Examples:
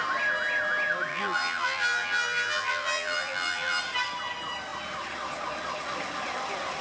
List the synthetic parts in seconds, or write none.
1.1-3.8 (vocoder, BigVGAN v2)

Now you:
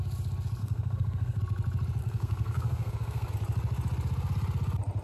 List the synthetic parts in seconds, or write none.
0.6-1.4 (codec, SNAC); 2.0-3.3